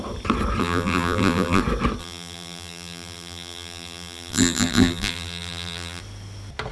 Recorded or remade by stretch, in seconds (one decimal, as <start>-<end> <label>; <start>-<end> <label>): 0.0-0.6 recorded; 0.6-1.6 remade; 1.6-2.0 recorded; 2.0-6.0 remade; 6.0-6.7 recorded